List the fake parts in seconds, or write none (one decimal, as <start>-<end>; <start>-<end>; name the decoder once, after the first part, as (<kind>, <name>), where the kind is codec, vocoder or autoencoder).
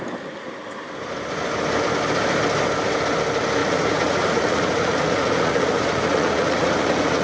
3.6-7.2 (vocoder, Vocos)